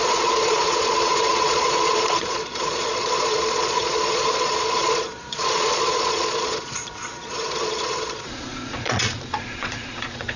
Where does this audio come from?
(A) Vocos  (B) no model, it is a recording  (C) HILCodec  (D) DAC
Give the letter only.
A